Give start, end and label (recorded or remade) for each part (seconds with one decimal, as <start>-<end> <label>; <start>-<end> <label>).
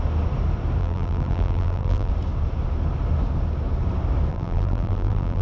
0.0-0.8 recorded; 0.8-2.1 remade; 2.1-4.3 recorded; 4.3-5.4 remade